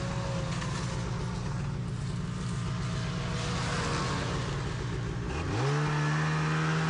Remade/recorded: recorded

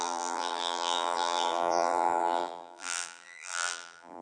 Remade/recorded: remade